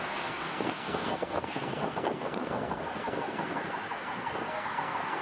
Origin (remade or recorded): remade